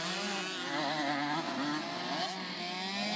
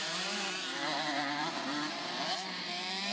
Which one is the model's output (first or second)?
second